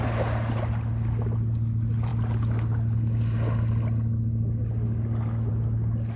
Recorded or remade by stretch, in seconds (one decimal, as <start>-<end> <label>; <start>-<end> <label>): 0.0-6.2 recorded